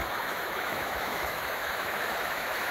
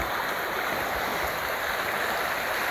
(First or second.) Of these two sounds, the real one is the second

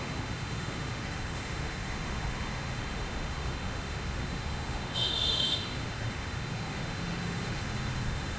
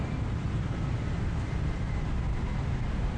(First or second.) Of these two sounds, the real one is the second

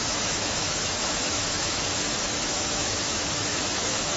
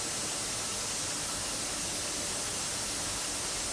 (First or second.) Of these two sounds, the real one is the second